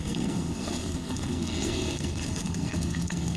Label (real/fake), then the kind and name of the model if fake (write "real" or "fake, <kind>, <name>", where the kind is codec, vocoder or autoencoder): fake, codec, SNAC